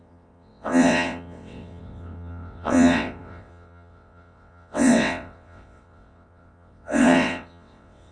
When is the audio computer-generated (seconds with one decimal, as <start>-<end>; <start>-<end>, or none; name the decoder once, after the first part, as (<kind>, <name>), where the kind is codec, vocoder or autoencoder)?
0.0-8.1 (vocoder, WaveNeXt)